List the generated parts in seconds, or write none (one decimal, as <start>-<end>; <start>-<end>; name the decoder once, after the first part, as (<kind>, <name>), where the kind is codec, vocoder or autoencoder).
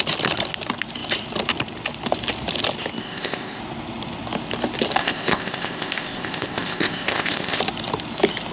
3.0-3.6 (codec, ZipCodec); 5.0-7.6